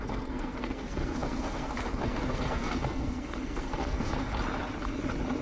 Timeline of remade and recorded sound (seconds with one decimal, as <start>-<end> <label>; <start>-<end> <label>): 0.0-4.3 remade; 4.3-5.4 recorded